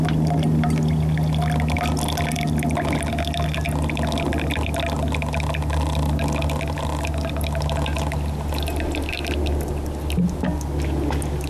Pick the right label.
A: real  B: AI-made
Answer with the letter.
A